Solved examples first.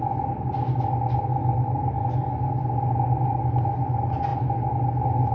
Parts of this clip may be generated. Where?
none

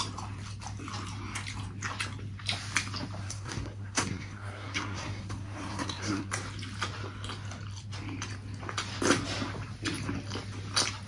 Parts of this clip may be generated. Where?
3.2-6.3 (codec, SNAC)